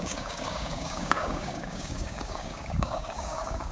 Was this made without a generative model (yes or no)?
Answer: no